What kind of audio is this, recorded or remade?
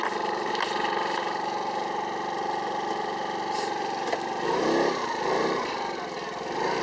recorded